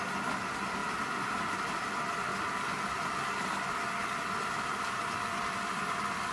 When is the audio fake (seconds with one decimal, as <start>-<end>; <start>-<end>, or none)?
0.8-1.5; 2.3-3.3; 4.0-6.3